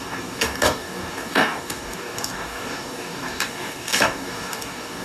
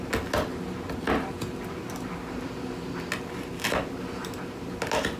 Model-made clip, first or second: first